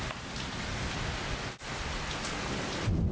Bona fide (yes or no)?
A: yes